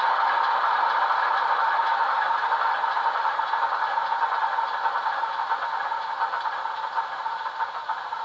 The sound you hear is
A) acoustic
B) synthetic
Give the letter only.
A